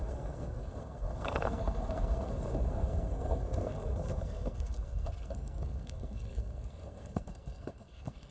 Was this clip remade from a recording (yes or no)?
yes